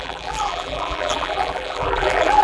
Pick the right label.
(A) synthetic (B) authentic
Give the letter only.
A